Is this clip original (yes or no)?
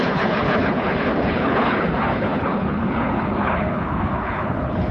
no